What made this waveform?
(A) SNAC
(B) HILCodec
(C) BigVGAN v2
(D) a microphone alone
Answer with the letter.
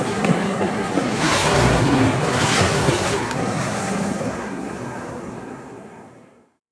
A